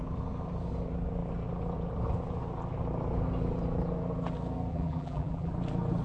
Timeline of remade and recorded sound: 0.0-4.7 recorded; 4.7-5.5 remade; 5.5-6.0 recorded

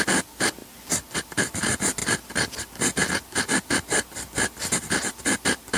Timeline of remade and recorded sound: 0.0-5.8 recorded

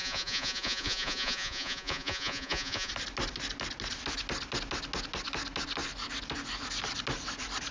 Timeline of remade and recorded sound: 0.0-2.9 remade; 2.9-7.7 recorded

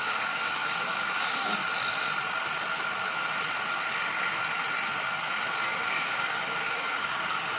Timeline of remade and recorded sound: 0.0-1.6 remade; 1.6-5.9 recorded; 5.9-7.6 remade

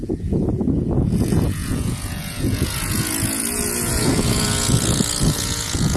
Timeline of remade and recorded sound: 0.0-6.0 remade

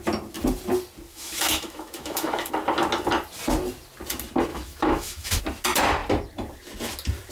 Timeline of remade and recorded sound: 0.0-1.1 recorded; 1.1-2.5 remade; 2.5-4.5 recorded; 4.5-5.4 remade; 5.4-7.3 recorded

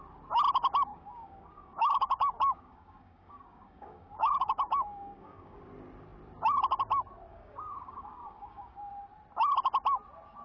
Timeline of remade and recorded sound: 0.0-0.9 recorded; 0.9-5.6 remade; 5.6-7.3 recorded; 7.3-8.9 remade; 8.9-10.4 recorded